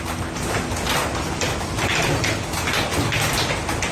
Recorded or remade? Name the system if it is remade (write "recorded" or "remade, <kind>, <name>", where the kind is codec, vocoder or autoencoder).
recorded